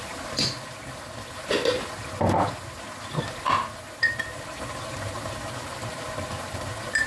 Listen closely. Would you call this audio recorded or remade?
recorded